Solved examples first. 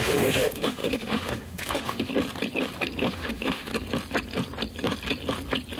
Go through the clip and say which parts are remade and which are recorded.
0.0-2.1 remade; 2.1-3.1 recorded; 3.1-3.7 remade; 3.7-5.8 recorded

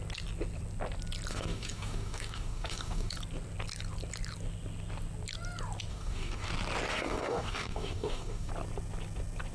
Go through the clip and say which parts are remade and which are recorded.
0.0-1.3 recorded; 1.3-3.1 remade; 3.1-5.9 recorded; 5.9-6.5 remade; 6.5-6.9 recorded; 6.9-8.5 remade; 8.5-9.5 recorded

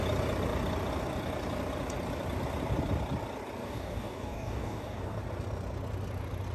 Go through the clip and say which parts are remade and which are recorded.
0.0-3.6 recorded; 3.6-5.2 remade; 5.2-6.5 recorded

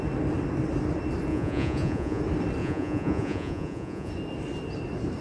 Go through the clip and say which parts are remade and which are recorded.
0.0-1.3 recorded; 1.3-2.2 remade; 2.2-2.6 recorded; 2.6-4.1 remade; 4.1-5.2 recorded

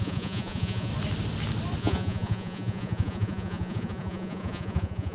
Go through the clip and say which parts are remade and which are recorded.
0.0-0.9 remade; 0.9-1.8 recorded; 1.8-5.1 remade